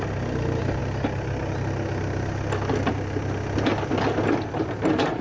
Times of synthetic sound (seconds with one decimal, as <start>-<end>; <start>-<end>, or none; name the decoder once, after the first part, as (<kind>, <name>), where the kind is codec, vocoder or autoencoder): none